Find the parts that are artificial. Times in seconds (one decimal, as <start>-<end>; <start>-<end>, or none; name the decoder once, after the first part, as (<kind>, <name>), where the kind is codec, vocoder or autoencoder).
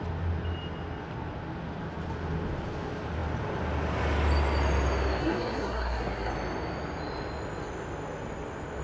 5.2-6.3 (codec, SNAC)